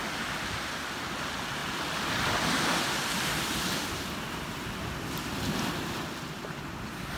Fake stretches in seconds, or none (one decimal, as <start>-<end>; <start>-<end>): none